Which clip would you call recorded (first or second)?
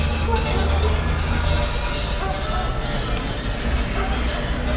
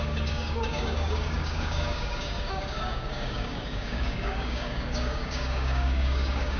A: first